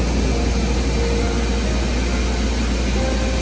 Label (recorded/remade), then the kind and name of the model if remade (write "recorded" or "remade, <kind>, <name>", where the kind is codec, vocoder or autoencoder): recorded